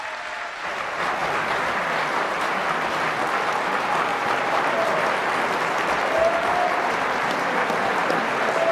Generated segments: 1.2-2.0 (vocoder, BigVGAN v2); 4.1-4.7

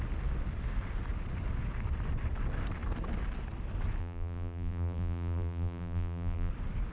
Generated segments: 4.0-6.5 (vocoder, BigVGAN v2)

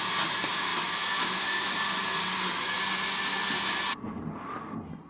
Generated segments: none

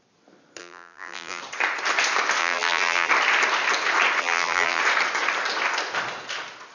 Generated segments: 0.6-1.4 (vocoder, BigVGAN v2); 2.4-3.1; 4.2-4.8

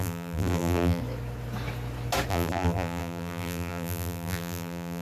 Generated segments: 0.0-1.0 (vocoder, BigVGAN v2); 2.3-5.0

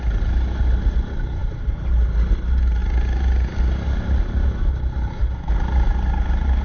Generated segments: none